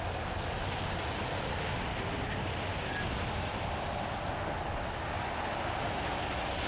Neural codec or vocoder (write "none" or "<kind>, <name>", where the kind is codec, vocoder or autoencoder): none